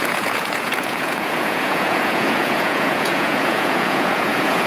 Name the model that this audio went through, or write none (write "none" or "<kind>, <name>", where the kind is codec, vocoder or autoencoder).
vocoder, Vocos